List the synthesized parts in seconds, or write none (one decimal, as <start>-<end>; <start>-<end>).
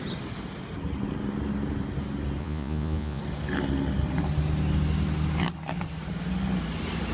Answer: 2.4-3.2